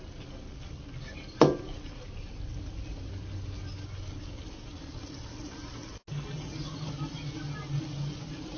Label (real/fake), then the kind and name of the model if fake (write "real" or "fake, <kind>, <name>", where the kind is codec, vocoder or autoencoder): real